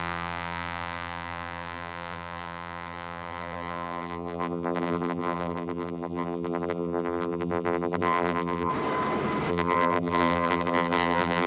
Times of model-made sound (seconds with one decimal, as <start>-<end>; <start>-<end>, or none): 0.0-8.7; 9.5-11.5